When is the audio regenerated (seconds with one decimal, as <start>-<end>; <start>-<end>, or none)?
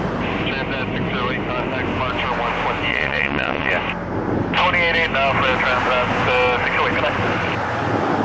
2.9-3.7